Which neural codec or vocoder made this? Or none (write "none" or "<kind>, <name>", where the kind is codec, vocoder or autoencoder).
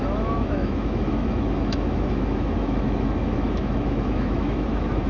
autoencoder, DAC-VAE